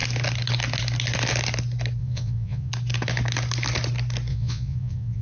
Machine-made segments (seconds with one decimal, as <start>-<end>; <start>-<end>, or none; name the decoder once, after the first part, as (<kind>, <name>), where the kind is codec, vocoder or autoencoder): 2.0-2.7 (vocoder, Vocos); 4.3-5.2